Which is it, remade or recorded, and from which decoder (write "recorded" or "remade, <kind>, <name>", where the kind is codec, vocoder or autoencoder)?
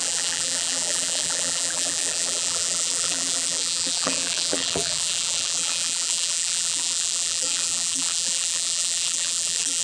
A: remade, vocoder, BigVGAN v2